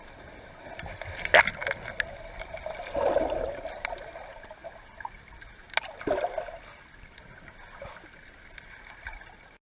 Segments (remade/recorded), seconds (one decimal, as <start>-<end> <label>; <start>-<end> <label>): 0.0-9.7 recorded